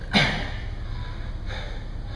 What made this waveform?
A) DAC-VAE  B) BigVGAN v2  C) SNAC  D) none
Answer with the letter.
D